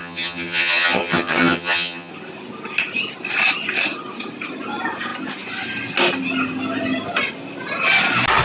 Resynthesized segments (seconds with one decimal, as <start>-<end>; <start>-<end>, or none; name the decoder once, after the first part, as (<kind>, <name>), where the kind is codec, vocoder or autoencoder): 0.0-2.1 (vocoder, HiFi-GAN)